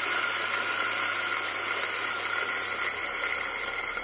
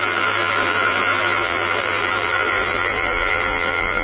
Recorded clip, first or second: first